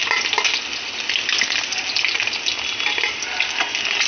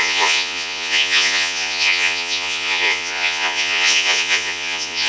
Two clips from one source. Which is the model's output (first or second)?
second